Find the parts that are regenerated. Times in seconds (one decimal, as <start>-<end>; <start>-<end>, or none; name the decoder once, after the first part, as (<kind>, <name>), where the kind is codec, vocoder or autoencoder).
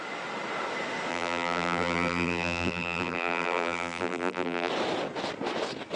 1.1-4.7 (vocoder, BigVGAN v2)